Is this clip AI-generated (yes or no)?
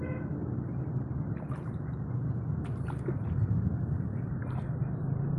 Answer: no